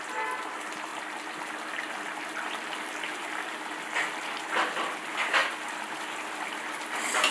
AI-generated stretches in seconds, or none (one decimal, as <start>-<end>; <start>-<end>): none